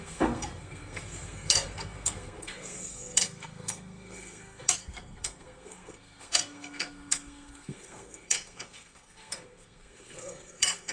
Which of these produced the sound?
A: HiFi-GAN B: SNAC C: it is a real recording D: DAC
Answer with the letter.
B